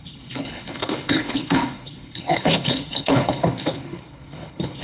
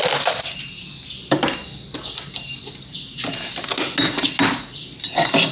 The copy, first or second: first